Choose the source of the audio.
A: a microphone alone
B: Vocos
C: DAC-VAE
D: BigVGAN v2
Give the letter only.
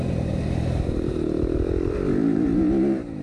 D